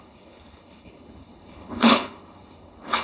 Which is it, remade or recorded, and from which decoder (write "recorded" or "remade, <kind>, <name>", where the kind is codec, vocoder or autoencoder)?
remade, codec, HILCodec